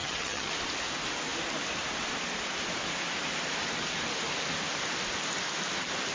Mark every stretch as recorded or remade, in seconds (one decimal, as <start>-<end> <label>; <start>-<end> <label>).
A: 0.0-0.5 remade; 0.5-6.1 recorded